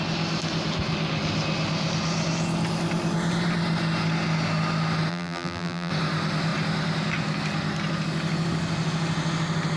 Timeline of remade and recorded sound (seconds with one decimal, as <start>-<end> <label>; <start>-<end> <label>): 0.0-5.1 recorded; 5.1-5.9 remade; 5.9-9.8 recorded